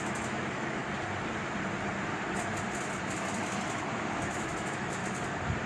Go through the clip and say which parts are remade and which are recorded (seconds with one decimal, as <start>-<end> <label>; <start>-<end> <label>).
0.0-0.8 remade; 0.8-3.9 recorded; 3.9-5.0 remade; 5.0-5.7 recorded